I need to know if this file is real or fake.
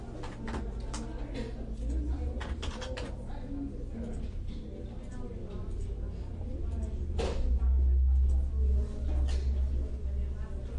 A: real